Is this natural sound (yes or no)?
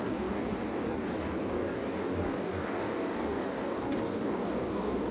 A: no